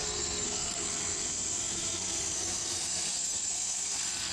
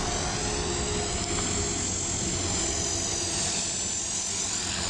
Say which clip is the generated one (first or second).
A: first